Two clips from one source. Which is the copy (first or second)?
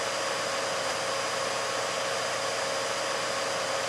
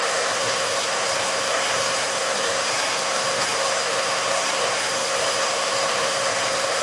second